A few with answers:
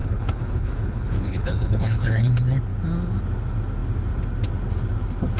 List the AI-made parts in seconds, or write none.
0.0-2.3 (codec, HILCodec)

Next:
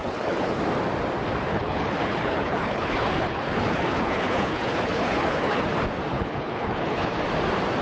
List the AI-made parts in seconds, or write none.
0.0-0.6 (codec, HILCodec); 1.5-5.6; 6.1-7.2

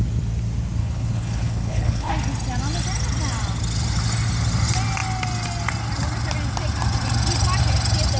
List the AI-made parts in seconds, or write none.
0.8-2.1 (codec, HILCodec)

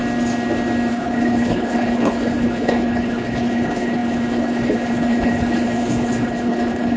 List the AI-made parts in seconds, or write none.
0.9-7.0 (codec, HILCodec)

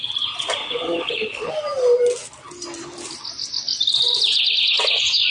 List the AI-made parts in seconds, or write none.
0.6-1.5 (codec, HILCodec)

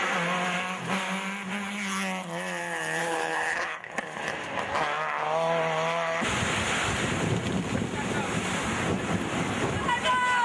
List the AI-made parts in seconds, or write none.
3.0-3.9 (codec, HILCodec)

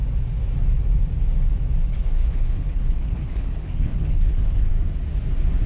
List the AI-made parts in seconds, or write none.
1.9-4.7 (codec, HILCodec)